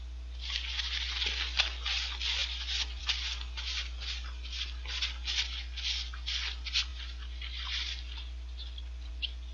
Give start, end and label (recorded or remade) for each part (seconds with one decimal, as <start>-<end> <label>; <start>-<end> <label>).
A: 0.0-2.4 recorded; 2.4-3.0 remade; 3.0-6.9 recorded; 6.9-9.1 remade; 9.1-9.5 recorded